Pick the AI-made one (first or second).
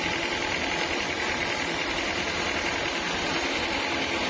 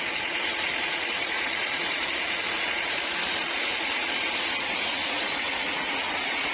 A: second